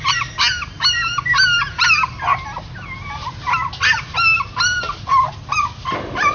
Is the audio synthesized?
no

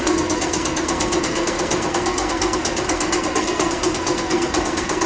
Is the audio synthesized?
yes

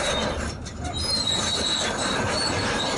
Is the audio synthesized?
no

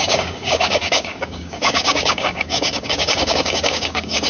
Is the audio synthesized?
yes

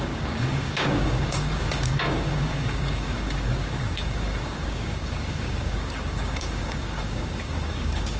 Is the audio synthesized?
yes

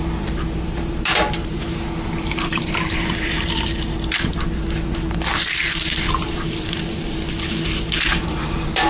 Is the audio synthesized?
yes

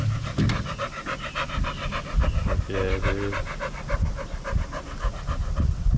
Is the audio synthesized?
no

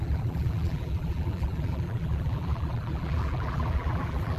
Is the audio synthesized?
yes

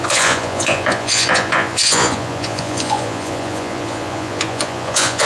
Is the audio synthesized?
yes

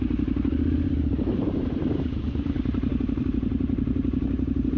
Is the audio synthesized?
yes